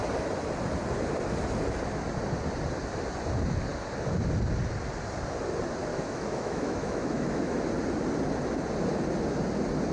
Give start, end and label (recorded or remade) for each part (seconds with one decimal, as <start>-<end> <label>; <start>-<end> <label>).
0.0-5.9 recorded; 5.9-7.7 remade; 7.7-9.9 recorded